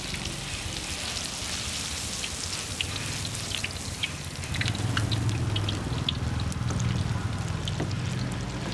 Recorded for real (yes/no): yes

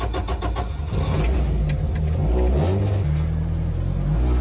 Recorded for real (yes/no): yes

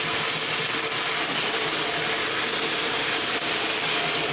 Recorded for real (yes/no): yes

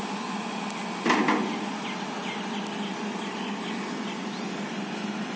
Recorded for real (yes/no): yes